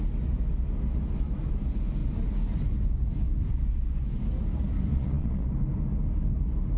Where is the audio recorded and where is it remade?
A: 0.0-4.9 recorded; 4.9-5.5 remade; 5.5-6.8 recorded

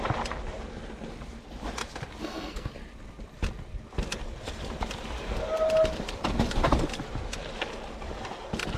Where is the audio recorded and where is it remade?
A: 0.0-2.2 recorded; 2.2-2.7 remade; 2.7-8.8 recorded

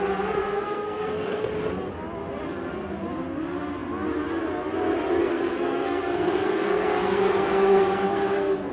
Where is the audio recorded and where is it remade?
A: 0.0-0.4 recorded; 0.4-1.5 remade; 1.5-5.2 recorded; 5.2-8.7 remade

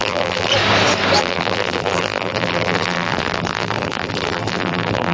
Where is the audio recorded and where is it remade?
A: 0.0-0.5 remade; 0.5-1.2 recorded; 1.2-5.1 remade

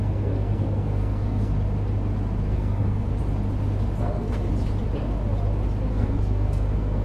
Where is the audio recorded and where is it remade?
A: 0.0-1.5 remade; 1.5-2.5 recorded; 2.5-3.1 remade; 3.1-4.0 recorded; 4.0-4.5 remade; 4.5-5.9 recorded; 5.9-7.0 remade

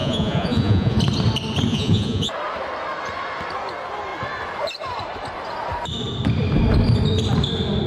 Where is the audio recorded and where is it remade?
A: 0.0-1.0 remade; 1.0-1.7 recorded; 1.7-2.3 remade; 2.3-7.9 recorded

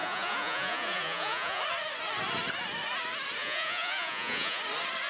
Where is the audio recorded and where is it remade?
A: 0.0-1.6 remade; 1.6-3.4 recorded; 3.4-4.6 remade; 4.6-5.1 recorded

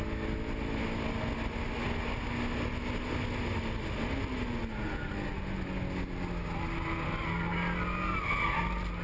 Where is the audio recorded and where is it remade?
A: 0.0-9.0 recorded